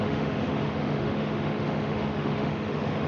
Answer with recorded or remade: remade